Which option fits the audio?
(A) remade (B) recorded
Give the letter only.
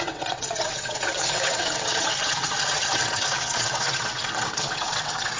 A